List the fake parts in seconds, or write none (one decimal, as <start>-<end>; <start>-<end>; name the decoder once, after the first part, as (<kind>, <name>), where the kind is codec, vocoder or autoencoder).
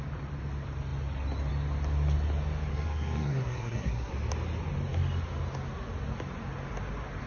2.7-4.1 (codec, SNAC)